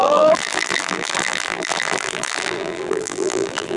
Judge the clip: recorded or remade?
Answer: remade